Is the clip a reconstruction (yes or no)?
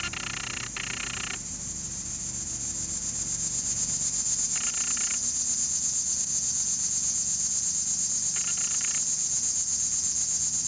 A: no